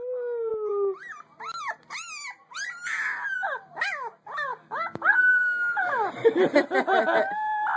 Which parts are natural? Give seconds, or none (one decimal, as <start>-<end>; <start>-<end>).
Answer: 0.0-7.8